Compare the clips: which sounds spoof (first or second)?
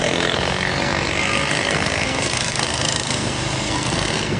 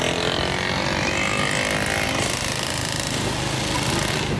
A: first